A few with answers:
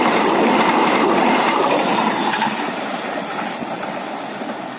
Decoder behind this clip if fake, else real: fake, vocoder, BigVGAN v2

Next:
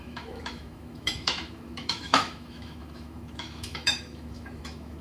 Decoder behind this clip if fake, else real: fake, autoencoder, DAC-VAE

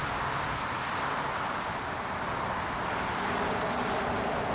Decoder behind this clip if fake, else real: real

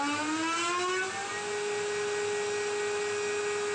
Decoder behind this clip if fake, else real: real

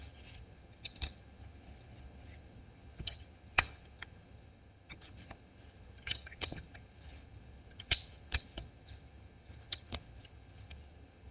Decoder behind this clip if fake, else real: fake, vocoder, HiFi-GAN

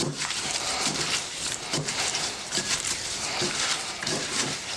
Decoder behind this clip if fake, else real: fake, vocoder, BigVGAN v2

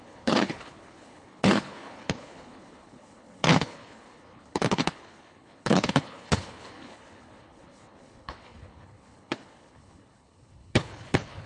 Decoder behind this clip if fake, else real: fake, codec, HILCodec